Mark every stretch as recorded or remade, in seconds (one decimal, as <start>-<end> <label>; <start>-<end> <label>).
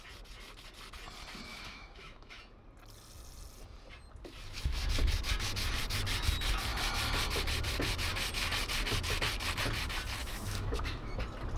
0.0-1.5 recorded; 1.5-2.4 remade; 2.4-10.2 recorded; 10.2-11.2 remade; 11.2-11.6 recorded